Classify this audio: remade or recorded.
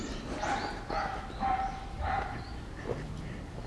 recorded